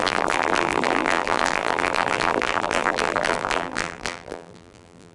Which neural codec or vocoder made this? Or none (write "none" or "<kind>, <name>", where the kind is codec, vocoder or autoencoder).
vocoder, BigVGAN v2